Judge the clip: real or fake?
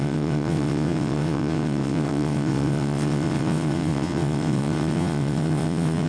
fake